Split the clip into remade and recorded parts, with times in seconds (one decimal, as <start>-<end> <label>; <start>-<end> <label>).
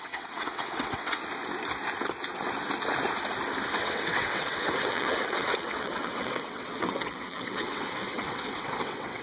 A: 0.0-1.2 remade; 1.2-3.8 recorded; 3.8-9.2 remade